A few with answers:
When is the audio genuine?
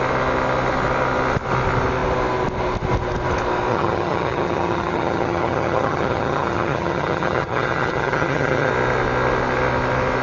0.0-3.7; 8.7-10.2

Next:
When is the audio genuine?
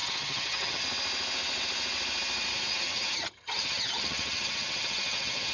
0.8-2.7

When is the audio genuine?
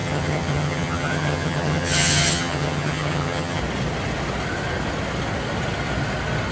3.6-6.5